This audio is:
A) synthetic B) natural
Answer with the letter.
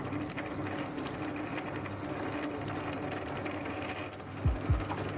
B